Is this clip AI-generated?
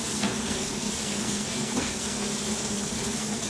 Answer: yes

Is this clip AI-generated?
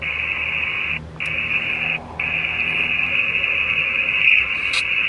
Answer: no